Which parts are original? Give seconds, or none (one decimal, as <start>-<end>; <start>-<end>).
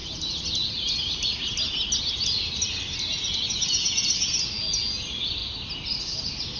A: 0.0-6.6